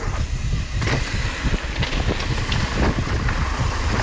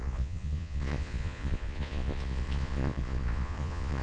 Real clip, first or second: first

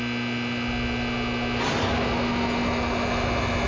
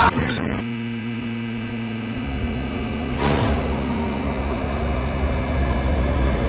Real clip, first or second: first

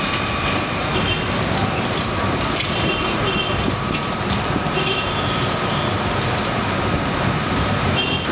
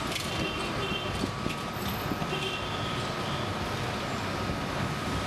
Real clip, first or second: second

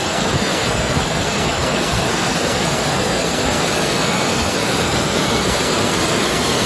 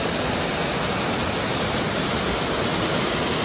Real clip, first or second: second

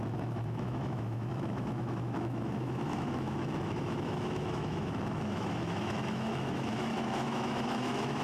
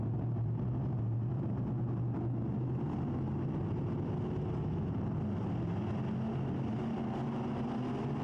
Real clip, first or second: second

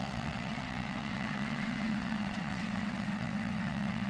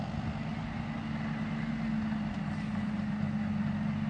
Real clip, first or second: second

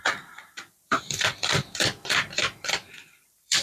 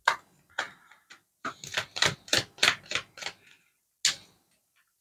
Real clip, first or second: second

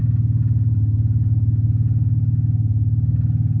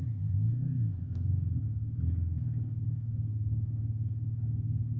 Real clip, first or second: first